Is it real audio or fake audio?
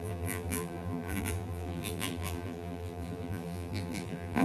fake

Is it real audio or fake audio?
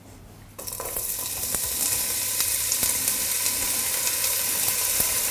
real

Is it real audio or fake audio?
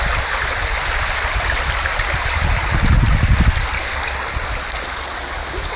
real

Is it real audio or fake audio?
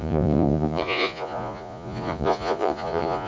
fake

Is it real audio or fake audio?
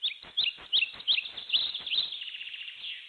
real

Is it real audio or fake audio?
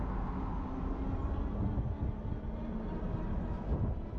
real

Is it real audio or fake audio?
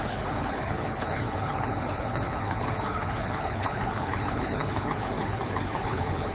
fake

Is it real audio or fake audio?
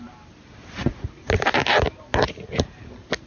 real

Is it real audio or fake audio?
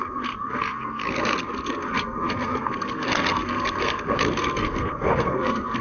fake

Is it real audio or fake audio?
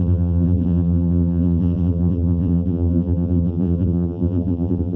fake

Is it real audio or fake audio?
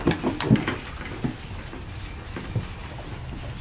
real